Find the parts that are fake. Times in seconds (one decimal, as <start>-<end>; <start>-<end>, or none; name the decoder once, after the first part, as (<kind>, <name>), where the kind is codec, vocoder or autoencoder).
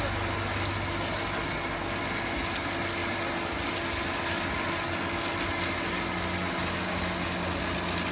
none